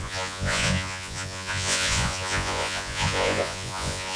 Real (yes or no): no